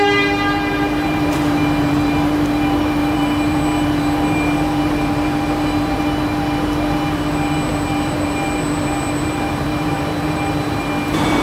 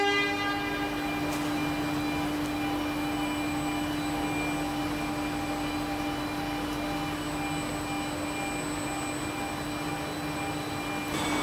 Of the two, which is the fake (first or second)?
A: first